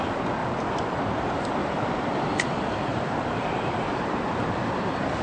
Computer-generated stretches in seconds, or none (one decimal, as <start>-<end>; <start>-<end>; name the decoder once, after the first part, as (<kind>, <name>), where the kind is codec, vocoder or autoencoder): 0.4-1.0 (vocoder, BigVGAN v2); 2.9-4.0